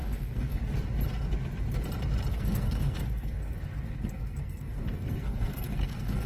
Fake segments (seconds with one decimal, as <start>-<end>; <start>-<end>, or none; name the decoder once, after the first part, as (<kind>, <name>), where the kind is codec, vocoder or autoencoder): 0.0-0.6 (codec, SNAC); 2.3-6.3